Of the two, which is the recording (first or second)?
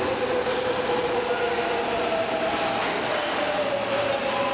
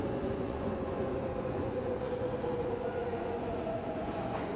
first